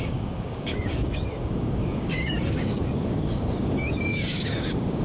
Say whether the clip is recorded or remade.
remade